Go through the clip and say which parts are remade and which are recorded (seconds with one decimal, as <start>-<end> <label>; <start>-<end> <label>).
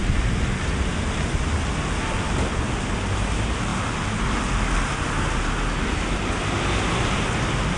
0.0-7.8 recorded